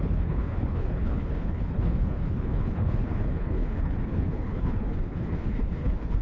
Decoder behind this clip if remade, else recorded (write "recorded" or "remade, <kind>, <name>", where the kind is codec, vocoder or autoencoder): remade, codec, HILCodec